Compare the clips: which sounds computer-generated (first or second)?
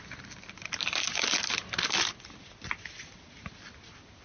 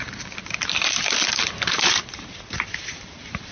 second